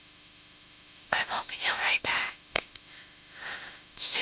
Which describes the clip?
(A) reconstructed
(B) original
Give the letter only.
A